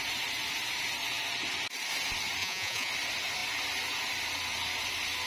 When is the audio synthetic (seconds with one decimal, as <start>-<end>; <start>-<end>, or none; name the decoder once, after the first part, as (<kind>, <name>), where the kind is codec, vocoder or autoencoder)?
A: 2.4-2.9 (vocoder, Vocos)